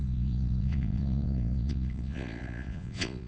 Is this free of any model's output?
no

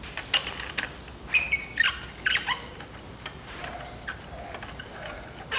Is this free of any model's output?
yes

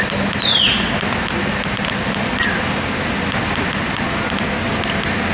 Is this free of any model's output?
yes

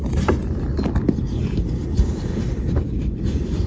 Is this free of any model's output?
yes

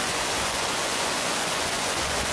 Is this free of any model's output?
no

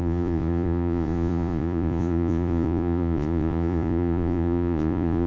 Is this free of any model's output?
no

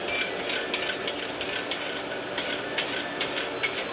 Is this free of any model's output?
yes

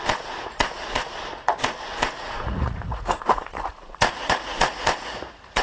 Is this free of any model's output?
no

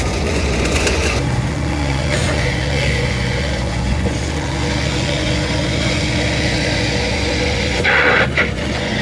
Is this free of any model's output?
no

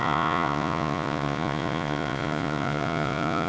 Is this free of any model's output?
no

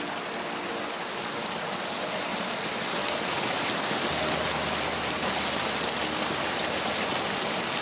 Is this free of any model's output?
yes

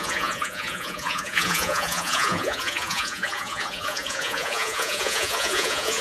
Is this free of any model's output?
no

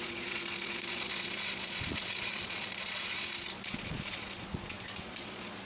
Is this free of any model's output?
no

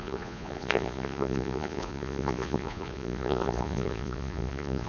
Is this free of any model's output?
no